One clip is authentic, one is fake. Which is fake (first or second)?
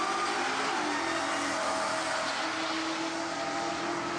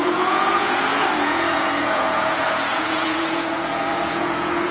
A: second